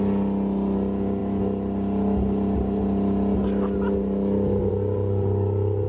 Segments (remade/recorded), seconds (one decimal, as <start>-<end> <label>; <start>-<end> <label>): 0.0-5.9 recorded